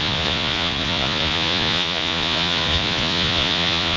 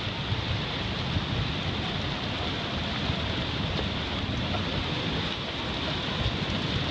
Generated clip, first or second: first